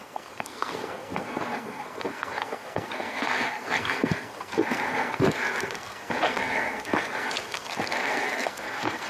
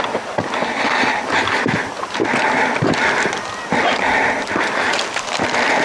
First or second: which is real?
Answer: second